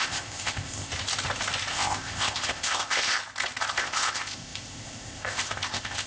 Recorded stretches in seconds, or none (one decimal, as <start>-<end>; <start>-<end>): 0.9-1.7; 3.2-3.8